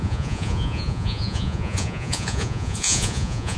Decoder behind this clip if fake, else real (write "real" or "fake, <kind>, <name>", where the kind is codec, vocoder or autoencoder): fake, vocoder, Vocos